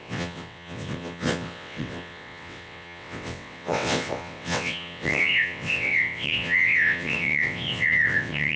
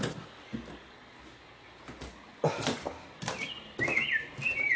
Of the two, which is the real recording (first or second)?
second